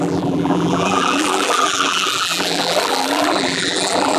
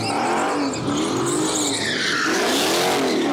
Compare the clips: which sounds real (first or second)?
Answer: second